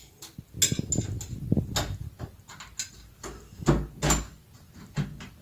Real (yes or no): yes